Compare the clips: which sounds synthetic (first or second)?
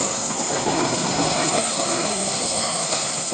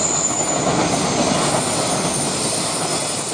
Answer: first